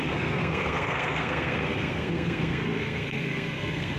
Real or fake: fake